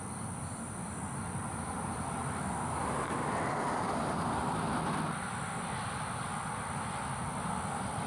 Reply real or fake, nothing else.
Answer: real